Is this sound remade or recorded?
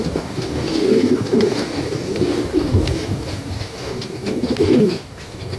remade